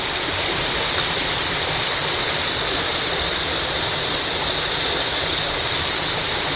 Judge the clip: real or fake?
real